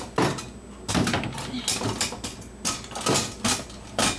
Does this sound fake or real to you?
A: real